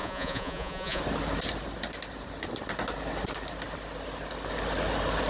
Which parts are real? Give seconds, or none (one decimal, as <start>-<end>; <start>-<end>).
1.0-5.3